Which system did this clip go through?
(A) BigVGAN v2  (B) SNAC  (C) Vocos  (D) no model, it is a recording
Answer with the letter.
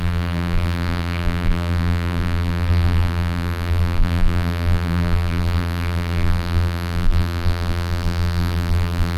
A